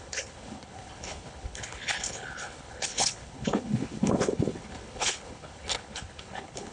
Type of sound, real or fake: fake